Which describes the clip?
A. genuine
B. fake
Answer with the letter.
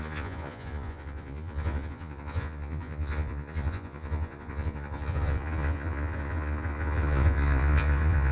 B